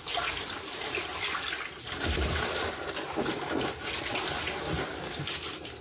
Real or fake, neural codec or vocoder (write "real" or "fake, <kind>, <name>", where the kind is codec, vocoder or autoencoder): real